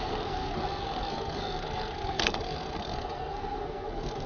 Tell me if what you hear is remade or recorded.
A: remade